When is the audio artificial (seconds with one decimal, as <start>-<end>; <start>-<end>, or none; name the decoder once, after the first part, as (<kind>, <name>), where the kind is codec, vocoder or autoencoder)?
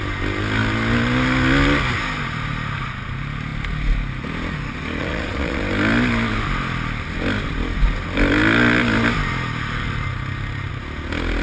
5.0-5.6 (vocoder, Vocos)